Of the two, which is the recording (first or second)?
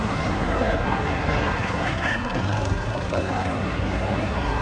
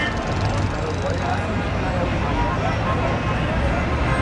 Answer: second